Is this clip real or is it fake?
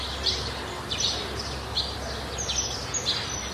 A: real